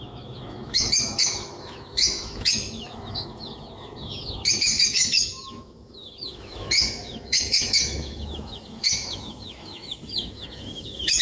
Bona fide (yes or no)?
no